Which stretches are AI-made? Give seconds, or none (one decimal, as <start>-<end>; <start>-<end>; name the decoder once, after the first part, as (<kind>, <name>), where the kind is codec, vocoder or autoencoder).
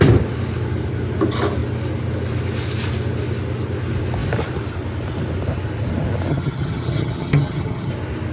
6.3-7.9 (vocoder, HiFi-GAN)